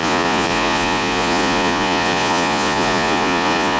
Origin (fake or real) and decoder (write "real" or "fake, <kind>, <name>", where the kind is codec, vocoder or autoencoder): fake, vocoder, Vocos